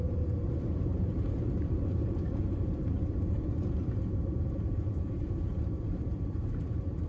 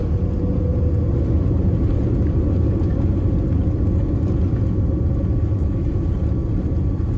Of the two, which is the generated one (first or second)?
first